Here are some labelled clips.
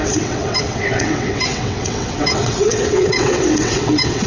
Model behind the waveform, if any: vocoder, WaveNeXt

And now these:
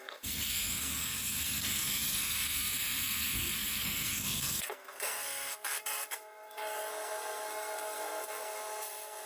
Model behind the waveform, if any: codec, SNAC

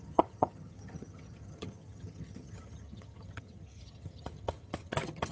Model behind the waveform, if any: vocoder, HiFi-GAN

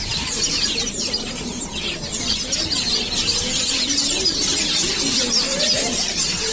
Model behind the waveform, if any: none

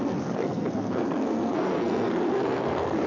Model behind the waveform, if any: codec, SNAC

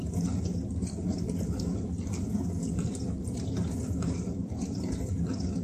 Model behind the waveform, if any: none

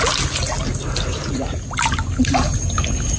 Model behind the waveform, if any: none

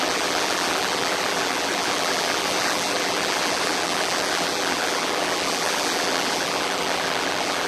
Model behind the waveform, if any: vocoder, BigVGAN v2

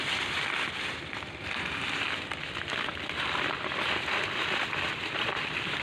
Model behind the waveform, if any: vocoder, BigVGAN v2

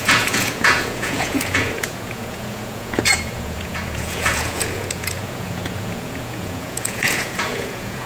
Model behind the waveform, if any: vocoder, Vocos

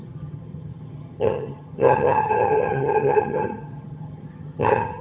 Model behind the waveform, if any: vocoder, HiFi-GAN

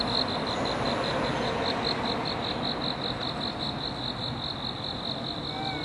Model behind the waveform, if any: none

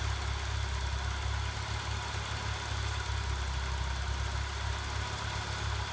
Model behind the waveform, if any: none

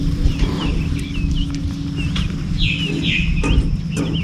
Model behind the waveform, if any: none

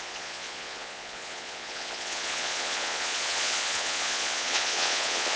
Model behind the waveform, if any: vocoder, Vocos